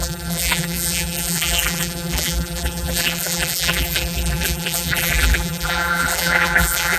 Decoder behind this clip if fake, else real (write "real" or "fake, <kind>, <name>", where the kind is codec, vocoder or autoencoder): fake, vocoder, BigVGAN v2